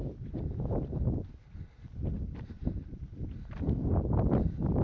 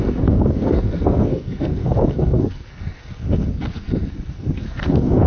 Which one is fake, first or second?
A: second